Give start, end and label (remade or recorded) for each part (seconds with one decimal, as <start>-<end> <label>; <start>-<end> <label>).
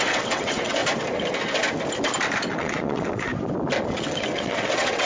0.0-0.8 remade; 0.8-2.5 recorded; 2.5-3.3 remade; 3.3-4.0 recorded; 4.0-5.1 remade